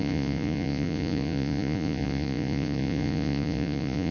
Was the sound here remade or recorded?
remade